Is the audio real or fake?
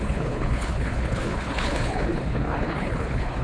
fake